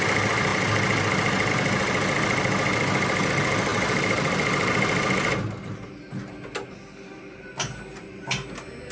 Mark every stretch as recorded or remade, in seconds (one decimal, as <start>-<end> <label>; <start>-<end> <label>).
0.0-8.9 recorded